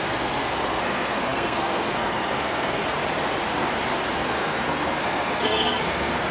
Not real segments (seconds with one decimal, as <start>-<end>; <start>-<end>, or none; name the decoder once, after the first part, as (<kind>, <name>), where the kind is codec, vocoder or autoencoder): 0.0-2.8 (codec, SNAC); 4.1-6.3